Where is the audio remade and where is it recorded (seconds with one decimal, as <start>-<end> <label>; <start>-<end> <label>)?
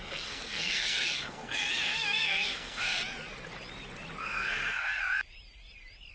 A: 0.0-3.0 remade; 3.0-4.2 recorded; 4.2-5.0 remade; 5.0-6.1 recorded